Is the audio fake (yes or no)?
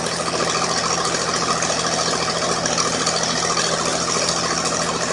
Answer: no